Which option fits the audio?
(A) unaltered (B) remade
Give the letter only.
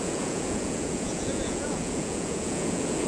B